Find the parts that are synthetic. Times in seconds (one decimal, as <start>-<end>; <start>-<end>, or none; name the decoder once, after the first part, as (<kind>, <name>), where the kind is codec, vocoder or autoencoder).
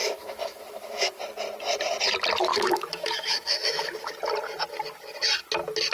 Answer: 0.0-1.2 (autoencoder, DAC-VAE); 2.5-4.1